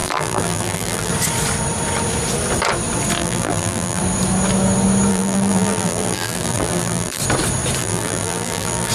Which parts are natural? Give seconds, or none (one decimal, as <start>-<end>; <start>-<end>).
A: 1.1-3.2; 4.0-5.1; 7.2-7.8